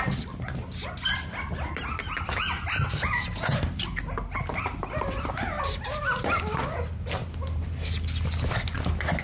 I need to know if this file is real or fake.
real